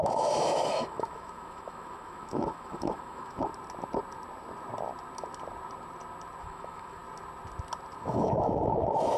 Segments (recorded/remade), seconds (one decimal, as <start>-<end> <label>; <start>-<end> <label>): 0.0-3.5 remade; 3.5-6.4 recorded; 6.4-7.0 remade; 7.0-8.0 recorded; 8.0-9.2 remade